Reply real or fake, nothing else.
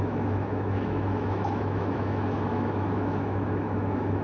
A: fake